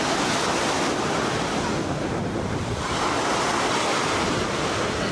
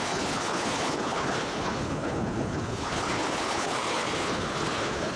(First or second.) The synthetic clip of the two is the second